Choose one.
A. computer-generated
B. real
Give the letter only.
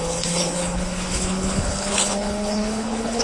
A